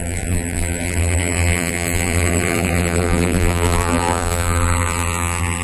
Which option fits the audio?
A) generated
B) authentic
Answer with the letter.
A